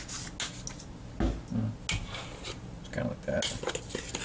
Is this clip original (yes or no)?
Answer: yes